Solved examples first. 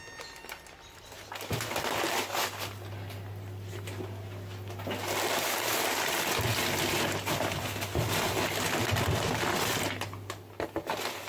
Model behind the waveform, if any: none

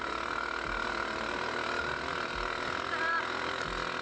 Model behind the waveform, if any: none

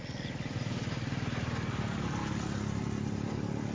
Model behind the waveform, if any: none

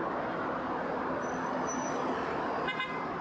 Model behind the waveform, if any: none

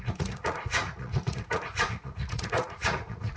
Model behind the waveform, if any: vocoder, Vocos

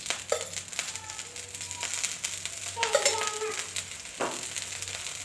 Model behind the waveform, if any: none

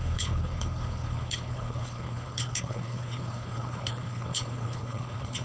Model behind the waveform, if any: codec, HILCodec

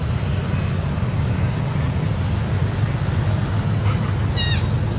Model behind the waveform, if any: none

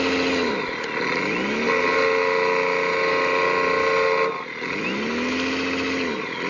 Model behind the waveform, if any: none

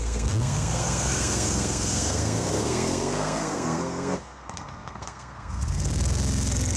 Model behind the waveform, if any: codec, SNAC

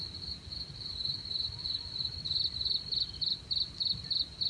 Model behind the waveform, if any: none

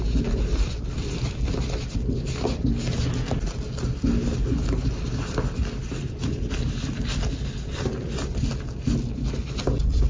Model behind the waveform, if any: none